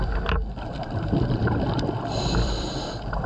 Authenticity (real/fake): fake